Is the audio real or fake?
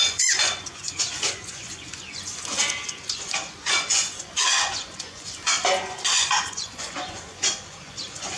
fake